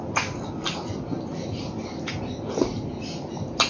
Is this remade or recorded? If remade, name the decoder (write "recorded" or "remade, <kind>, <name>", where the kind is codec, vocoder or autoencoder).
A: recorded